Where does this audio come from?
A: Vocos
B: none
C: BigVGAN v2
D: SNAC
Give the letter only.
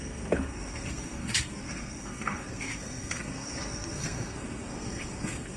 D